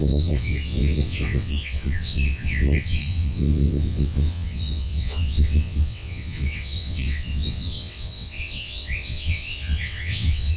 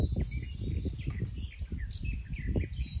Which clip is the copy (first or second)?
first